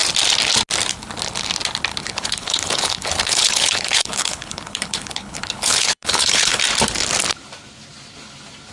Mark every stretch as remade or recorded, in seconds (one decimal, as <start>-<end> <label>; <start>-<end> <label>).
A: 0.0-1.9 recorded; 1.9-6.6 remade; 6.6-8.7 recorded